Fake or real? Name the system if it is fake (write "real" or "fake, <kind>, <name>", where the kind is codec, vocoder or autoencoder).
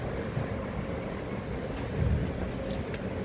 real